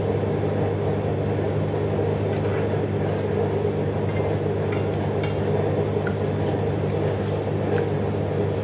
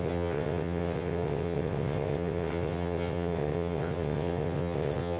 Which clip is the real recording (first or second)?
first